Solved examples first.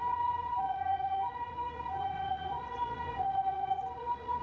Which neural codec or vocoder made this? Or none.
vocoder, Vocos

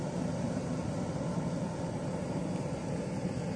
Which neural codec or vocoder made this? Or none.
none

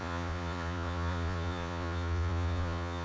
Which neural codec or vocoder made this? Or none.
vocoder, Vocos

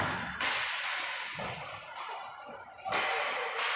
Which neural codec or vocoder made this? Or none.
none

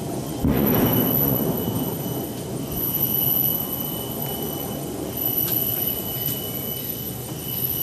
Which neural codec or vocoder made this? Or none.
vocoder, Vocos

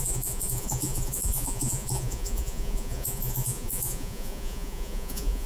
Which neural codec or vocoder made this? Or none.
vocoder, Vocos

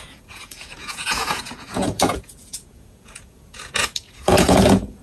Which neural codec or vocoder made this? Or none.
vocoder, Vocos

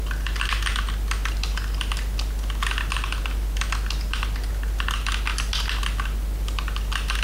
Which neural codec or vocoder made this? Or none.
none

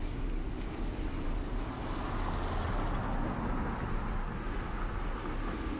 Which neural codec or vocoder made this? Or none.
none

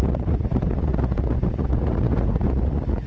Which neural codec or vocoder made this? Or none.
vocoder, Vocos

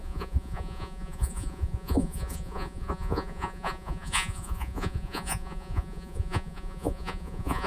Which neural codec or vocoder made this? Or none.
vocoder, Vocos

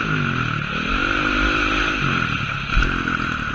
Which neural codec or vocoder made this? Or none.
none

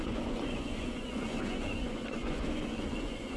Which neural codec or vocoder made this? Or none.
vocoder, Vocos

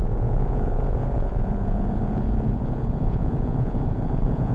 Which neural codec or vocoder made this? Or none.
vocoder, Vocos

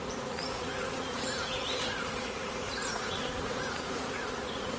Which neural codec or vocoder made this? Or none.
vocoder, Vocos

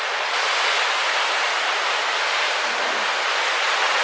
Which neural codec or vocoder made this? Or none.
none